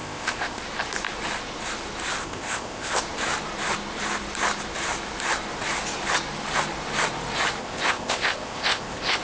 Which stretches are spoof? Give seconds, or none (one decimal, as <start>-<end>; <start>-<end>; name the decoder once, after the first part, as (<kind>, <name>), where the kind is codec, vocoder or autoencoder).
0.0-0.6 (codec, ZipCodec); 2.2-3.0; 7.6-9.2